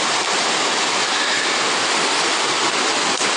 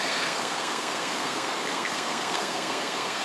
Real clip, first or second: first